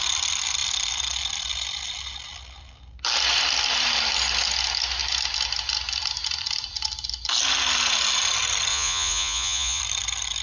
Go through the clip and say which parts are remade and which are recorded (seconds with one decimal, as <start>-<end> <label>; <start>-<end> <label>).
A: 0.0-8.7 recorded; 8.7-9.8 remade; 9.8-10.4 recorded